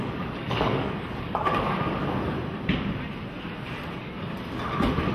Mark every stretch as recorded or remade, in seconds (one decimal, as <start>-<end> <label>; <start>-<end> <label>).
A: 0.0-2.0 remade; 2.0-5.1 recorded